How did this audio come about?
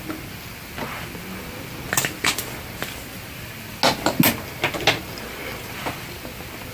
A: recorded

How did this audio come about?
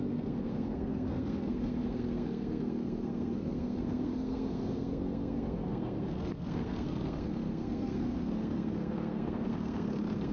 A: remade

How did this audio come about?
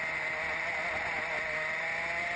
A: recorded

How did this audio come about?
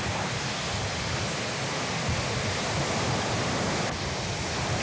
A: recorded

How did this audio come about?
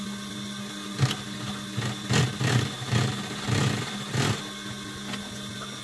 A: recorded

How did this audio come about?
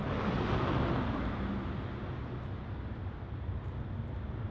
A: recorded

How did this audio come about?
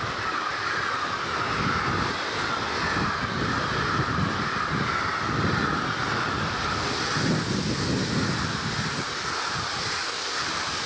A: recorded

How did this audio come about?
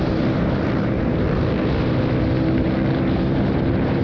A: recorded